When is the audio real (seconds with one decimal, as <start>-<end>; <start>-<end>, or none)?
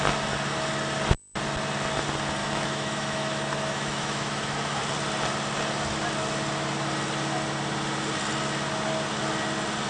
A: 0.0-2.4; 4.8-9.9